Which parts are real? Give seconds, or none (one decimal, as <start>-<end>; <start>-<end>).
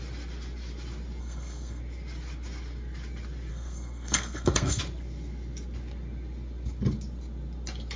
0.0-1.2; 1.8-3.5; 4.8-8.0